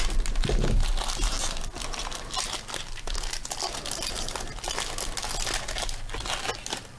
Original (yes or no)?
yes